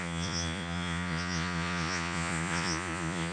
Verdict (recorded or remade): remade